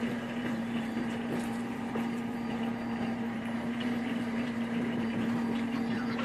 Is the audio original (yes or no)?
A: no